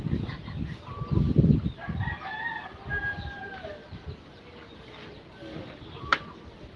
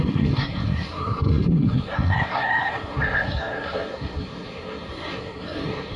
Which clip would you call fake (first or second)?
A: second